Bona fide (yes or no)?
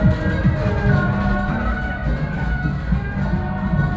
yes